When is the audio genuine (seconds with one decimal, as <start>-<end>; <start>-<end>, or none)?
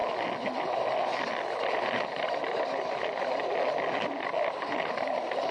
0.0-5.5